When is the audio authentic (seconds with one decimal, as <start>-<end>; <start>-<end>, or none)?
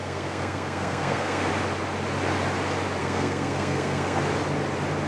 1.5-3.0; 4.2-5.1